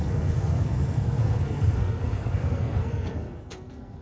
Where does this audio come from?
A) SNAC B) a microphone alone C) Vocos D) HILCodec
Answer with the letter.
A